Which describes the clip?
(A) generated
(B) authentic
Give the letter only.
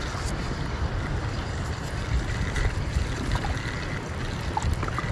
A